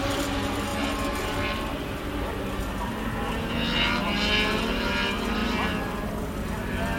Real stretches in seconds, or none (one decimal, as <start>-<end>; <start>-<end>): 0.0-7.0